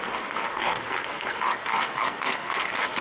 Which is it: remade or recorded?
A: remade